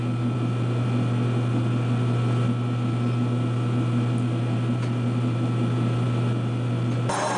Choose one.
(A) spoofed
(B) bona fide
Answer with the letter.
B